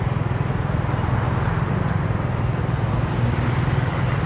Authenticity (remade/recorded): recorded